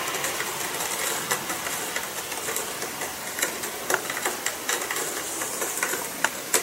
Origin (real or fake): real